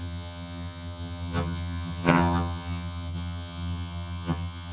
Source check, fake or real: fake